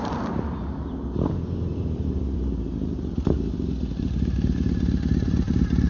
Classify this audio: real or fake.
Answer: fake